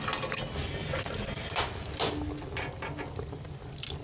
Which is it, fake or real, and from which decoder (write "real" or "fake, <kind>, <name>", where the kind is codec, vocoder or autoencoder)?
real